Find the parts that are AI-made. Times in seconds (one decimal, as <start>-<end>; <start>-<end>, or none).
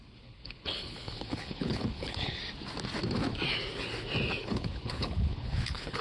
0.0-2.4; 4.4-6.0